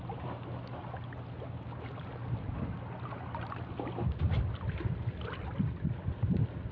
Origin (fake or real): real